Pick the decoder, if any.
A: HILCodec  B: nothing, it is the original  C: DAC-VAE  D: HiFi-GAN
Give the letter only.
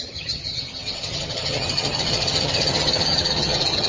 D